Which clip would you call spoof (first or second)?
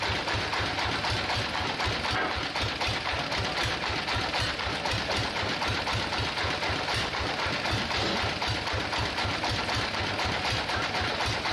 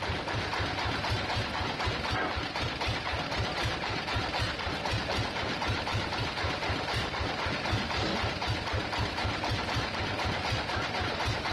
second